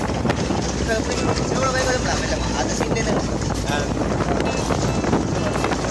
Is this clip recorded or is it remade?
recorded